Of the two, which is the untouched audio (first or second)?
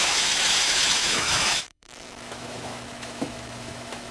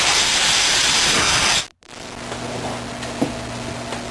second